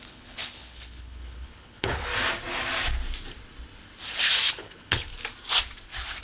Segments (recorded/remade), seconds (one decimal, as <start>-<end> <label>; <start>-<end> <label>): 0.0-2.1 remade; 2.1-4.5 recorded; 4.5-5.1 remade; 5.1-6.2 recorded